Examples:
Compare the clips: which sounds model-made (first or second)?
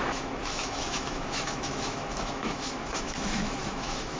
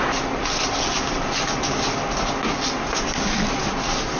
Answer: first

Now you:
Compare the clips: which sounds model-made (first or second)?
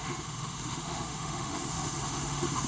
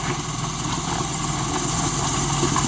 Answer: first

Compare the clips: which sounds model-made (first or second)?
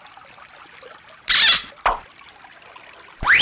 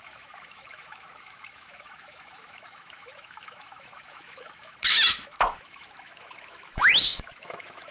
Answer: second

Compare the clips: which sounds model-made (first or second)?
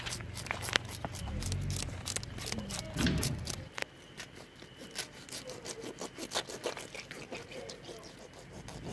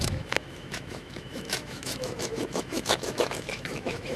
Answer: second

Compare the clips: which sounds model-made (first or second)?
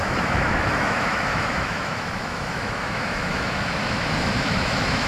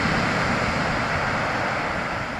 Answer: first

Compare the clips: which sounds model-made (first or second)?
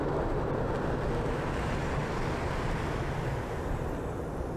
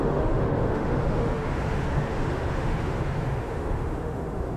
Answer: second